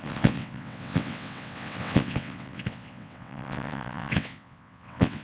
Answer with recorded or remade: remade